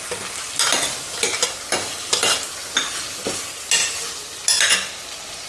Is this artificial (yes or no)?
no